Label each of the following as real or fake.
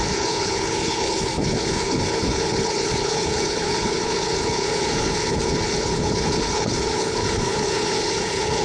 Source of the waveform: fake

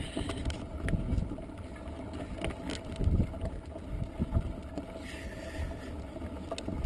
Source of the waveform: real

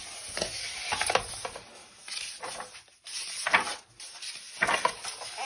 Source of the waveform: real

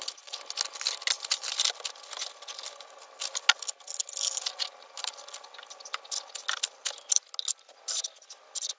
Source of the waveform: real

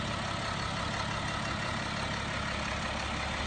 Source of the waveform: real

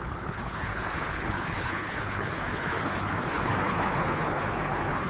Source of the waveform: fake